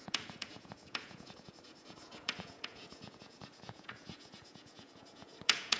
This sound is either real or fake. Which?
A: fake